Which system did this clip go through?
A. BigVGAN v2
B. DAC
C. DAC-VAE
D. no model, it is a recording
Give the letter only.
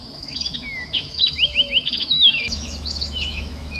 C